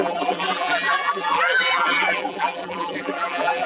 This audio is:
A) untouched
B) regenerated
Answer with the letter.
B